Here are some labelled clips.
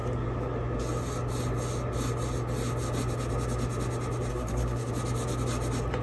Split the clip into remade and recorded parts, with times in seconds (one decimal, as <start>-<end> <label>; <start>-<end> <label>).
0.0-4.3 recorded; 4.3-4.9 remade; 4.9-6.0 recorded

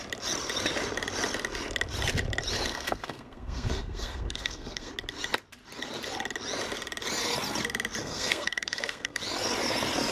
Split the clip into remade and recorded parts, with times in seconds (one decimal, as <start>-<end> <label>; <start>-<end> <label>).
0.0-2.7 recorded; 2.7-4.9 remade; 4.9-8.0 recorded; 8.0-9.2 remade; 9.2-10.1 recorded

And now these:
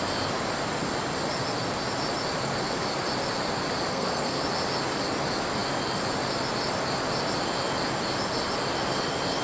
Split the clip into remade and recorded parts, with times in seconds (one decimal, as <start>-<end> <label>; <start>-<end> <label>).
0.0-3.9 recorded; 3.9-4.4 remade; 4.4-9.4 recorded

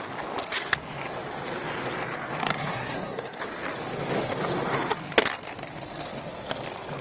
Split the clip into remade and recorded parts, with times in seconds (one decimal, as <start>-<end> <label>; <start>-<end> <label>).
0.0-2.4 recorded; 2.4-3.4 remade; 3.4-7.0 recorded